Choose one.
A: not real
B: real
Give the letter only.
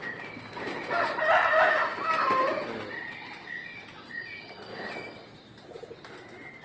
B